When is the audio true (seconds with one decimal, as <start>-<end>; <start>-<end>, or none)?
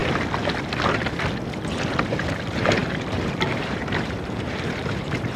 0.0-2.1